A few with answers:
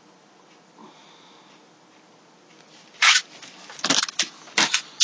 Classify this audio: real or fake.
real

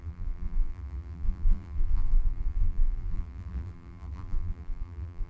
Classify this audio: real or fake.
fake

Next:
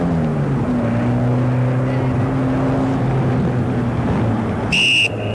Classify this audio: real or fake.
real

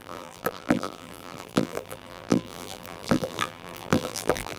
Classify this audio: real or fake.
fake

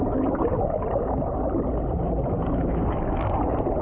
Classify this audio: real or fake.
real